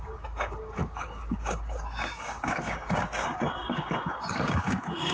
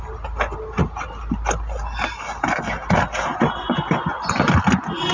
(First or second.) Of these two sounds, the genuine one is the second